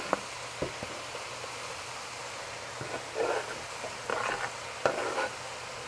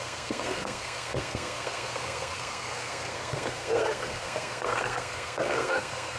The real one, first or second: first